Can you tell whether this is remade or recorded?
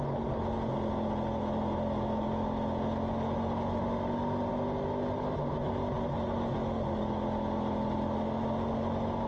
recorded